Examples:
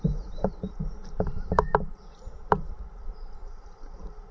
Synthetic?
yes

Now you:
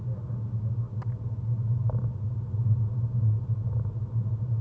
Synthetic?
no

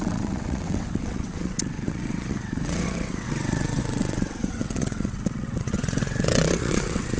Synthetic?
yes